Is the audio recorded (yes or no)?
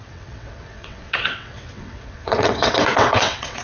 no